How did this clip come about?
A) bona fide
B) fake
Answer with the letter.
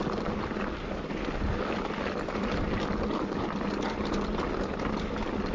A